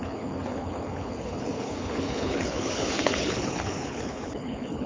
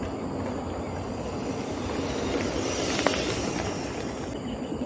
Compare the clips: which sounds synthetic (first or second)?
first